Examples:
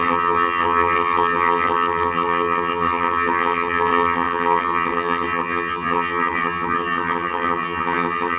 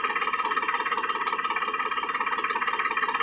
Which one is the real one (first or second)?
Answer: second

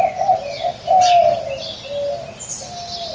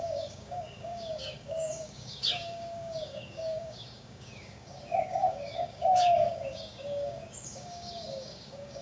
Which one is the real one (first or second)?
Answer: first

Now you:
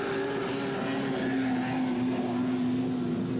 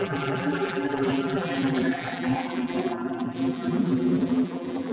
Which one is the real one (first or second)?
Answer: first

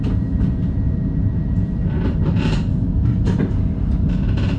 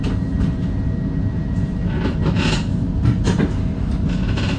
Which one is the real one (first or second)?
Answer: second